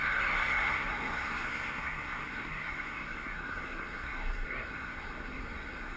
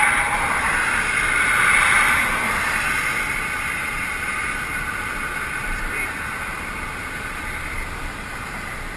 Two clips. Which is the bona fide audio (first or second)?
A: second